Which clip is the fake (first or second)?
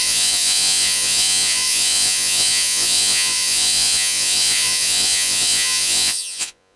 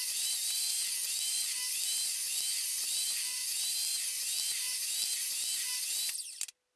first